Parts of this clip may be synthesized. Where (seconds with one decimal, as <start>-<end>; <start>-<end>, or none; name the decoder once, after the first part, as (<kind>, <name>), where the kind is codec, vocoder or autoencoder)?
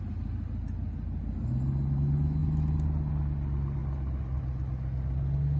2.4-3.1 (vocoder, BigVGAN v2)